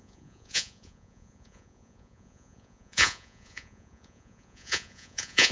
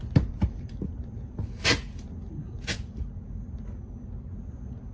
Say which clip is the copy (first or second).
first